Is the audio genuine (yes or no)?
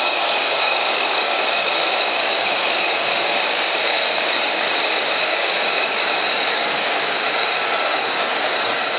no